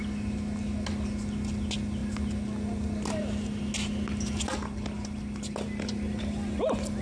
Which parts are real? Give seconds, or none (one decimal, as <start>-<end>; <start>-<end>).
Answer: 0.0-7.0